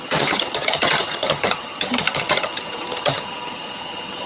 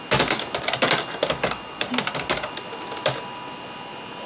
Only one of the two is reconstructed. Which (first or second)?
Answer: first